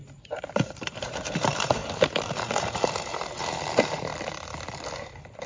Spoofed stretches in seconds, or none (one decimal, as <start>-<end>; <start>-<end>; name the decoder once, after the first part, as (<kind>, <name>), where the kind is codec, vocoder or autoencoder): 0.5-1.8 (vocoder, BigVGAN v2); 2.6-4.1; 5.0-5.5